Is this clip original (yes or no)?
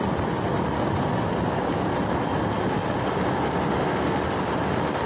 yes